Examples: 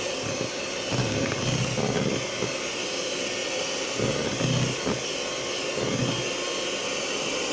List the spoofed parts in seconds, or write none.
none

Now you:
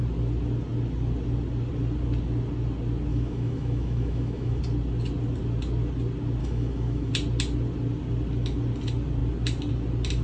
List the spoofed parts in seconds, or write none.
3.1-4.6 (autoencoder, DAC-VAE); 6.4-7.1

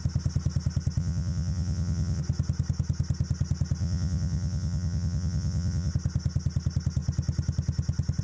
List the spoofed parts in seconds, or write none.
1.0-2.2 (vocoder, Vocos); 3.8-5.9

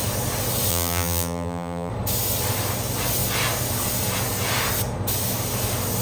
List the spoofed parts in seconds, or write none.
0.7-1.9 (vocoder, BigVGAN v2)

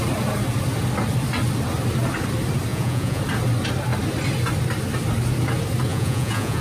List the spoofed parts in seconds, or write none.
2.7-3.2 (vocoder, Vocos); 5.9-6.6

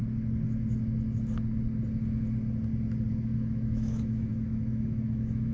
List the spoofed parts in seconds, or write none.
3.1-5.5 (autoencoder, DAC-VAE)